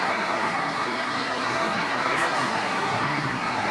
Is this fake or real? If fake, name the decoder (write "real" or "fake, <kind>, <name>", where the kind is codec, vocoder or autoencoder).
fake, codec, SNAC